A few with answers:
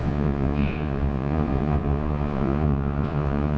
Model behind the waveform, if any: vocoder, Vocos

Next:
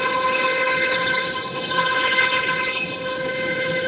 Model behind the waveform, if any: codec, HILCodec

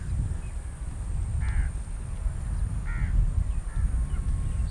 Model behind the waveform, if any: none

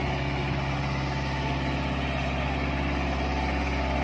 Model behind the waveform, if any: none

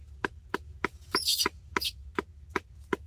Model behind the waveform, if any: autoencoder, DAC-VAE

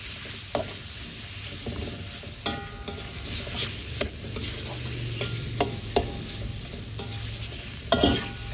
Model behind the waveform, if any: none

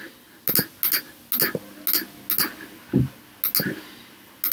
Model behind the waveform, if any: none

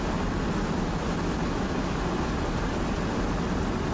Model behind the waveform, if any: none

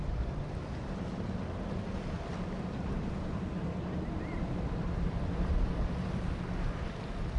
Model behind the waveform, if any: vocoder, BigVGAN v2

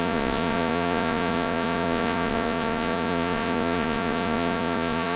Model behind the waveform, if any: vocoder, Vocos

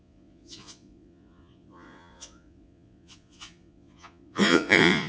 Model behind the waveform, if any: vocoder, Vocos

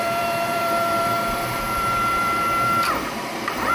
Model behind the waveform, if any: vocoder, BigVGAN v2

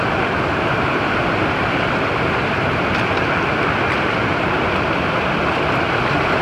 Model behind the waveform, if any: none